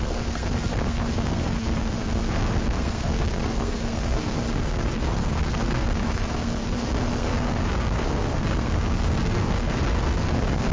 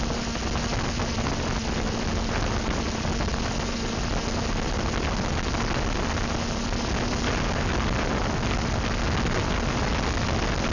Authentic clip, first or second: second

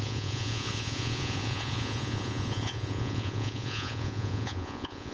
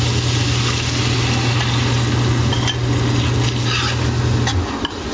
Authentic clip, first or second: second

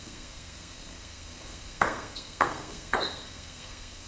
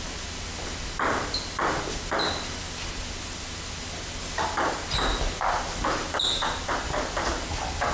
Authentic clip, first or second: second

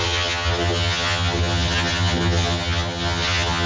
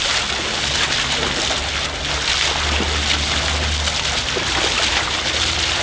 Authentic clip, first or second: second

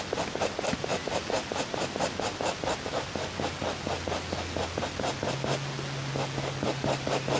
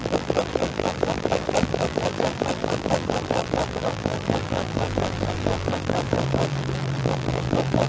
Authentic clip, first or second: first